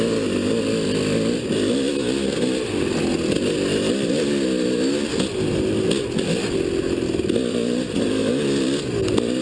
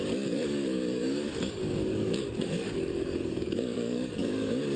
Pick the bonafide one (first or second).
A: first